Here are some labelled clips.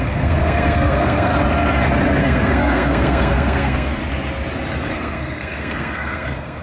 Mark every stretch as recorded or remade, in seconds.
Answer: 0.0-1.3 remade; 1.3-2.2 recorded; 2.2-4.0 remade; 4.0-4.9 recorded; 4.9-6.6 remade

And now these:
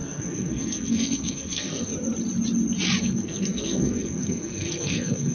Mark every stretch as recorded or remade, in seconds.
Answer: 0.0-1.9 remade; 1.9-3.0 recorded; 3.0-5.3 remade

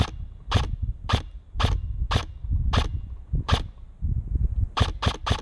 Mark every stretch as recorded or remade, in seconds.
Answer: 0.0-5.4 recorded

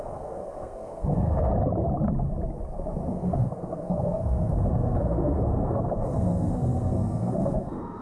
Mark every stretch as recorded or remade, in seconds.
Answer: 0.0-1.5 remade; 1.5-3.1 recorded; 3.1-8.0 remade

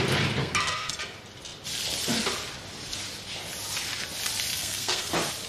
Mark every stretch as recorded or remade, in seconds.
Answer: 0.0-0.4 recorded; 0.4-0.9 remade; 0.9-4.5 recorded; 4.5-5.1 remade; 5.1-5.5 recorded

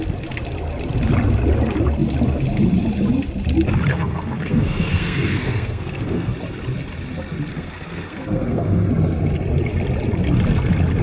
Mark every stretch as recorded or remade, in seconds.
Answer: 0.0-3.9 recorded; 3.9-6.3 remade; 6.3-7.5 recorded; 7.5-8.9 remade; 8.9-11.0 recorded

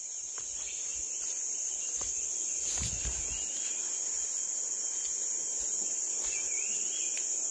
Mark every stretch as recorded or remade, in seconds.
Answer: 0.0-7.5 recorded

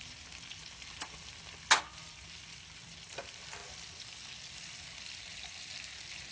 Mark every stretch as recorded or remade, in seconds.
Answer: 0.0-6.3 recorded